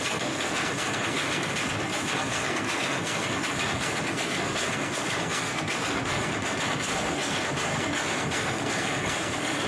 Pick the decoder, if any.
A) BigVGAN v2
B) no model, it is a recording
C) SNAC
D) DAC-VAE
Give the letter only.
C